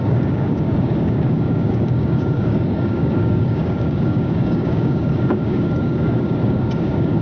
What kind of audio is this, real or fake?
fake